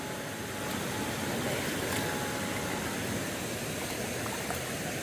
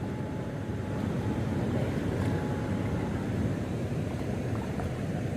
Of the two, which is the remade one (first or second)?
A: second